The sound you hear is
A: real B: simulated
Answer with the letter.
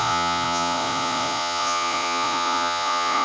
B